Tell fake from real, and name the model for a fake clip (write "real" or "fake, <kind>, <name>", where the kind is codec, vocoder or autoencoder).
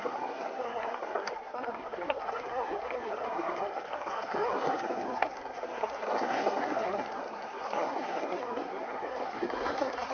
fake, codec, SNAC